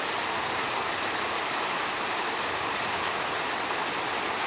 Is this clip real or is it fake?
real